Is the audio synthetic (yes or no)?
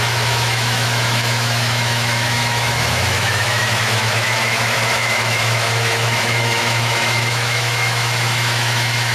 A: yes